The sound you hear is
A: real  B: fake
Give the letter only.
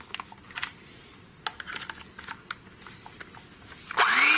A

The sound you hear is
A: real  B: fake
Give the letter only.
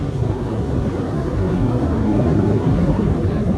B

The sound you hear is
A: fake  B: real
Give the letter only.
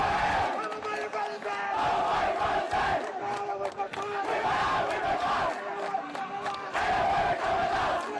B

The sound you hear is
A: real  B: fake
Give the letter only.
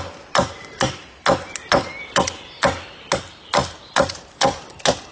A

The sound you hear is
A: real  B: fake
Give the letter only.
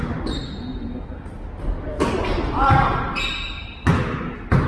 A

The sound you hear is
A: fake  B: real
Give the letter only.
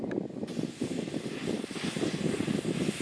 B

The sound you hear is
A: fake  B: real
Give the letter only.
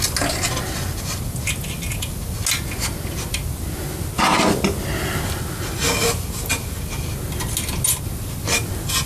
B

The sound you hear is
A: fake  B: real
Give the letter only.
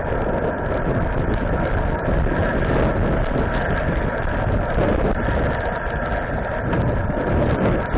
B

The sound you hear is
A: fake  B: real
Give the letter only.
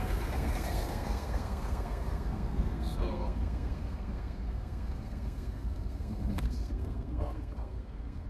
A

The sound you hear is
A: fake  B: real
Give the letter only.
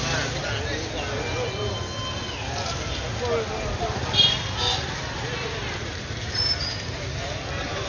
B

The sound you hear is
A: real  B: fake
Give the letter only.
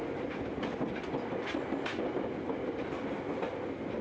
A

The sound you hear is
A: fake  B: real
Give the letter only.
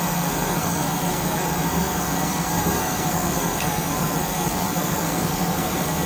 A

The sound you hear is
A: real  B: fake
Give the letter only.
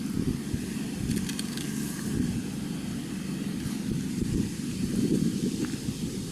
A